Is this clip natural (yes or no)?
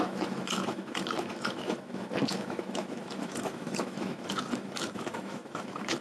no